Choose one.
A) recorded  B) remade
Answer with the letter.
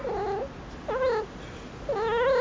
A